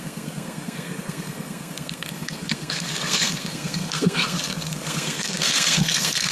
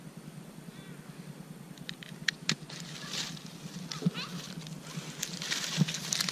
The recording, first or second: second